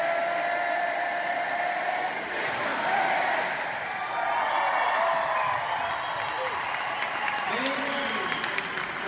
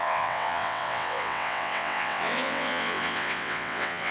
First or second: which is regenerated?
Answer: second